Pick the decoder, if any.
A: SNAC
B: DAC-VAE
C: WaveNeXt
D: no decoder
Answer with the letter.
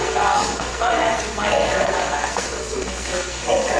A